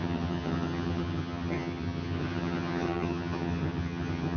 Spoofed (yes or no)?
yes